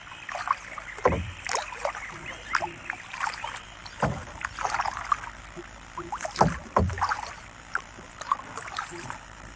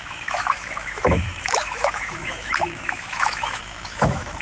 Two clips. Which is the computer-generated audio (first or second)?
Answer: second